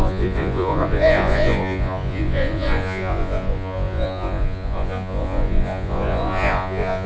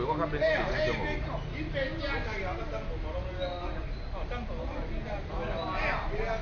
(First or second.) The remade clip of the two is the first